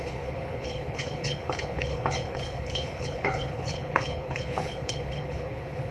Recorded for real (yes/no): no